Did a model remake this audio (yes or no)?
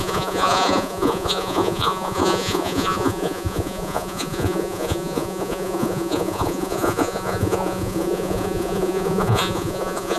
yes